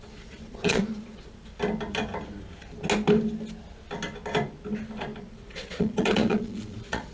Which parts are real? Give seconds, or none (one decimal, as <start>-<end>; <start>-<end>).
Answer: 1.5-5.2

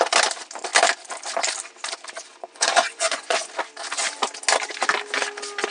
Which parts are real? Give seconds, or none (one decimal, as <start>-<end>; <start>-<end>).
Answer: 0.0-2.3; 3.5-5.7

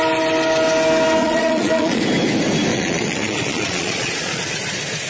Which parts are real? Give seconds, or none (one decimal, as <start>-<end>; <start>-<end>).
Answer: 0.0-1.2; 2.0-2.7; 4.4-5.1

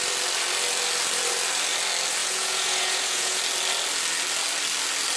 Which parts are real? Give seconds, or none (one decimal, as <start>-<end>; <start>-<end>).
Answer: 0.0-2.2; 3.4-5.2